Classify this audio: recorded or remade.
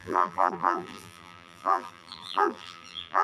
remade